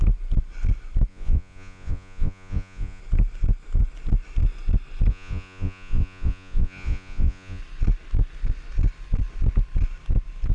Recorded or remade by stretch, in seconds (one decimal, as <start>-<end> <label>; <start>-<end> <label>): 0.0-1.1 recorded; 1.1-3.0 remade; 3.0-5.1 recorded; 5.1-7.6 remade; 7.6-10.5 recorded

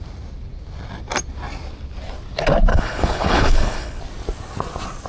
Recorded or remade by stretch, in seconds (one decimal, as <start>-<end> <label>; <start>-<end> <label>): 0.0-2.7 recorded; 2.7-4.0 remade; 4.0-5.1 recorded